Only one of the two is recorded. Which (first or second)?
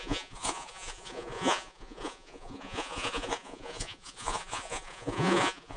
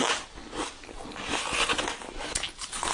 second